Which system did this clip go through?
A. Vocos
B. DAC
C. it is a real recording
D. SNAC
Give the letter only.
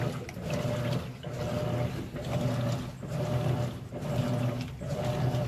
C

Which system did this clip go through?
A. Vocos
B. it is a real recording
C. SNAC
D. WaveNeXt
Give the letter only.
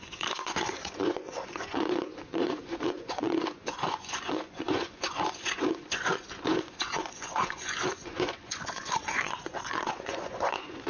A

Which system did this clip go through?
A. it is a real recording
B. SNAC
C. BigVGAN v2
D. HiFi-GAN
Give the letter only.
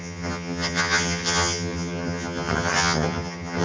D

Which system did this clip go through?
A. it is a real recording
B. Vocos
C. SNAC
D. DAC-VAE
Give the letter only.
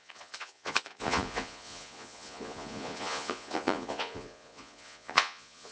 B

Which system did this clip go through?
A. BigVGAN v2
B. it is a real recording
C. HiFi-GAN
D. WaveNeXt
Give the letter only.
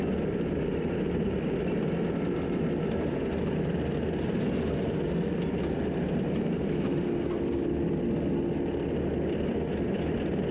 B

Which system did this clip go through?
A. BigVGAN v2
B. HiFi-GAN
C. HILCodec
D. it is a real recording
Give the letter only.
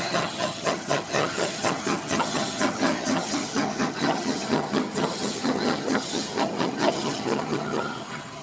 B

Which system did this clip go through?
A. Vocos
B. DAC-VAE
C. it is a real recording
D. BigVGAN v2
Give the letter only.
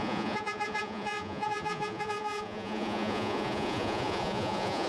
A